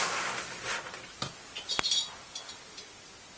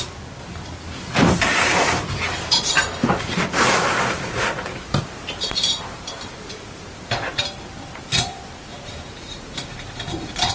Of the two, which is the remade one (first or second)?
second